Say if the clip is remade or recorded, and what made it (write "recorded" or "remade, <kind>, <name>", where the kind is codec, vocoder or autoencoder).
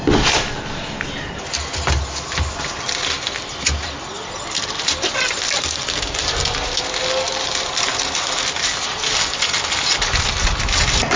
recorded